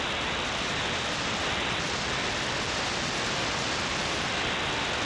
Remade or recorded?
recorded